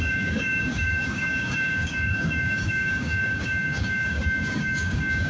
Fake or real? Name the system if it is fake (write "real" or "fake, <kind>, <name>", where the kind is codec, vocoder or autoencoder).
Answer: fake, codec, DAC